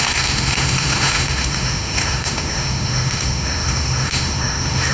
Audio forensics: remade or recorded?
remade